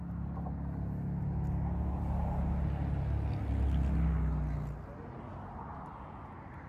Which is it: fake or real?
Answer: real